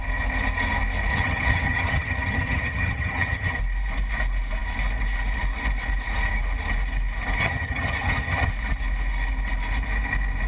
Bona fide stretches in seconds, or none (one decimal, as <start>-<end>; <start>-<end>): 0.0-1.1; 3.6-7.4; 8.5-10.5